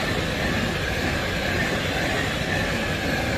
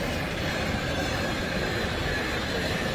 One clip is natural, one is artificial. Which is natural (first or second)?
first